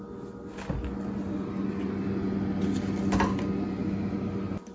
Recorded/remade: recorded